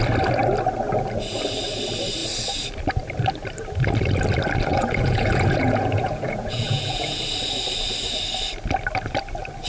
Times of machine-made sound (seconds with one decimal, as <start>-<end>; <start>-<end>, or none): 4.7-7.2